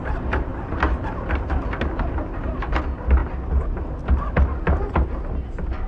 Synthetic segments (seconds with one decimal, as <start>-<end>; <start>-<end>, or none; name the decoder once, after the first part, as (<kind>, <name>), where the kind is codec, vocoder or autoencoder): none